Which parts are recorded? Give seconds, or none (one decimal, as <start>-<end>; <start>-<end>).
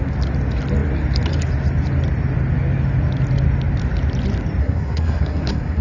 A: 0.0-4.6